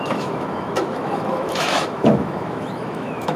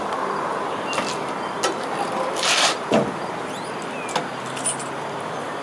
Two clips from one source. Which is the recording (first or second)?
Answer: second